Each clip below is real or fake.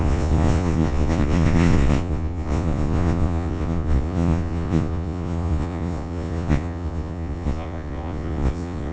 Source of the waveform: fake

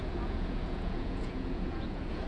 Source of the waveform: fake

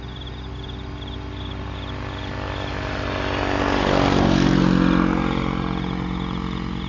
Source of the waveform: real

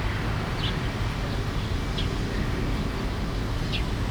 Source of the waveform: real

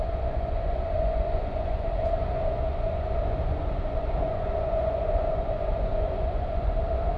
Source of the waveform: fake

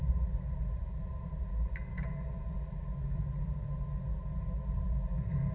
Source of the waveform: real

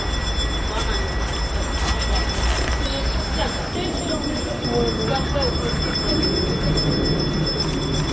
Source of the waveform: real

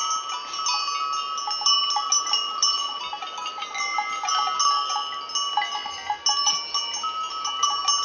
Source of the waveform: real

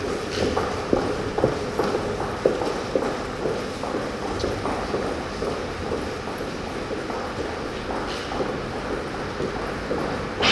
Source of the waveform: real